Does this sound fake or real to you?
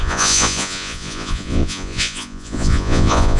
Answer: fake